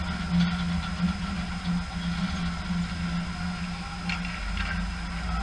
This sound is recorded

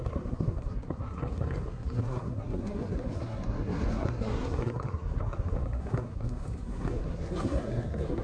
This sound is remade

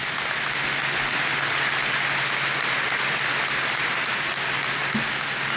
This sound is recorded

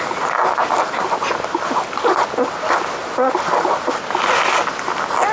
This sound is recorded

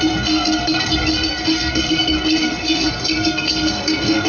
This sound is remade